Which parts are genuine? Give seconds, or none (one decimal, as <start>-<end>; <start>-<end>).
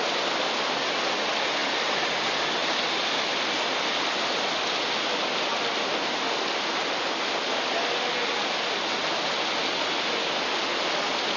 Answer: 0.0-1.6; 2.2-11.4